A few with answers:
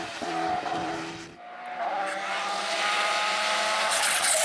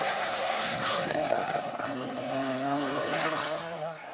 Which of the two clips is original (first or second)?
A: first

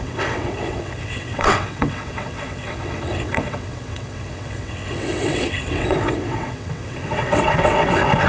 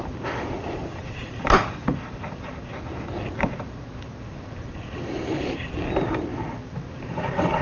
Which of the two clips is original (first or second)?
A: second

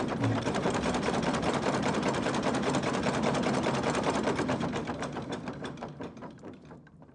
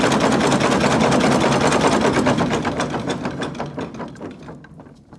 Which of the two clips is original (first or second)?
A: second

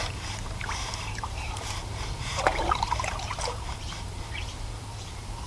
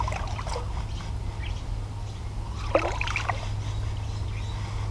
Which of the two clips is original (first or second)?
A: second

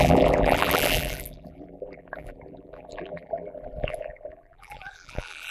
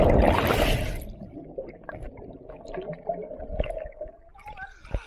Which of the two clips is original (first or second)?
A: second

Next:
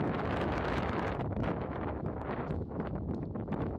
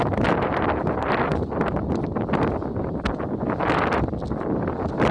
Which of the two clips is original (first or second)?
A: second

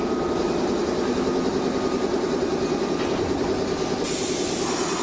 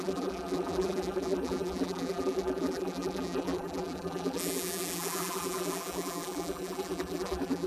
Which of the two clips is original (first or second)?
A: first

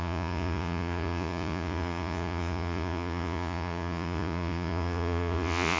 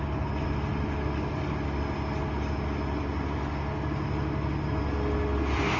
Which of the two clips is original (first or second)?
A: second